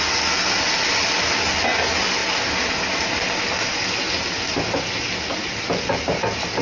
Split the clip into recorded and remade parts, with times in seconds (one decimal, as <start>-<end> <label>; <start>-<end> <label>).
0.0-6.6 recorded